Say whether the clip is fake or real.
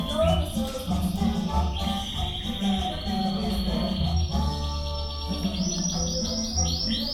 real